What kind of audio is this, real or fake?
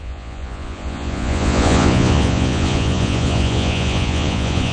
fake